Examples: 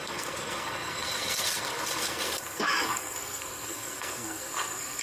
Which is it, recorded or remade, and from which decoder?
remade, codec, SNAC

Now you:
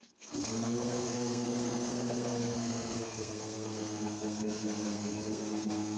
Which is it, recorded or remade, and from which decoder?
remade, codec, SNAC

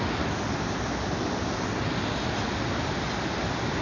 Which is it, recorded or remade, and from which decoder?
recorded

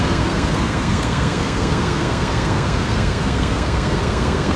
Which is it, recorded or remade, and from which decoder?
remade, codec, SNAC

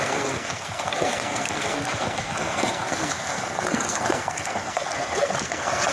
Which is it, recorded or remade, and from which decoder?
remade, codec, SNAC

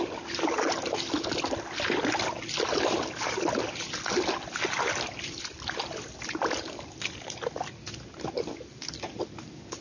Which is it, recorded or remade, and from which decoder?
recorded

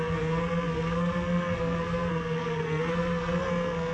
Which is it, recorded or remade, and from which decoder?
remade, codec, SNAC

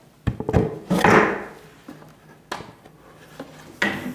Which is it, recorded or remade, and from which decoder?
recorded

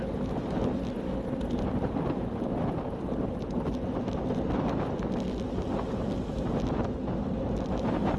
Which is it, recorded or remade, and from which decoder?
recorded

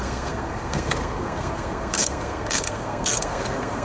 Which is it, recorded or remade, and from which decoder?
remade, codec, SNAC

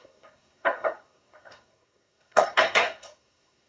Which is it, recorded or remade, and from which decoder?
remade, codec, SNAC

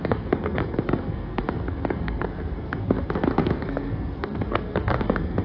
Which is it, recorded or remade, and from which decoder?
remade, codec, SNAC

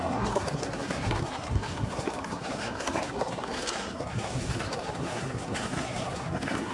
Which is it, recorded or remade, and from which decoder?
remade, codec, SNAC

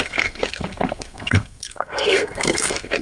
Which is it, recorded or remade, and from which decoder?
remade, codec, SNAC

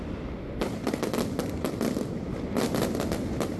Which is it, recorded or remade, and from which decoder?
recorded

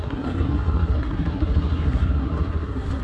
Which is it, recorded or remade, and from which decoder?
remade, codec, SNAC